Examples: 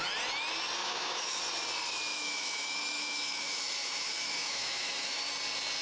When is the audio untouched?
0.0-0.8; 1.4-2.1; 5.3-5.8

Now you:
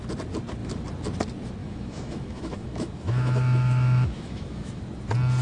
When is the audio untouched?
0.0-1.6; 4.8-5.4

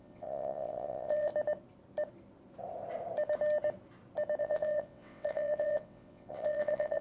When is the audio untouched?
1.3-4.4

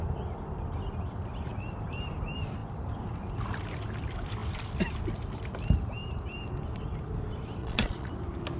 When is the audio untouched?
0.0-7.6; 8.1-8.6

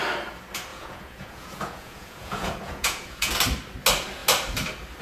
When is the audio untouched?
0.0-0.7; 3.3-5.0

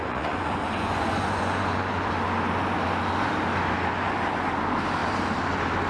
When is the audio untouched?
2.1-5.9

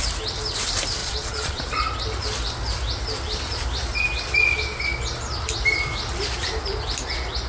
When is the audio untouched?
0.0-1.0; 1.6-7.5

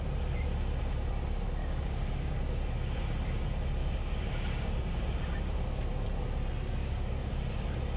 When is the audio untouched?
0.0-1.6; 2.4-3.8; 4.7-6.8; 7.4-8.0